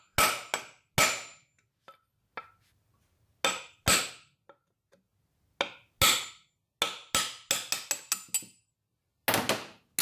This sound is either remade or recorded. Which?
recorded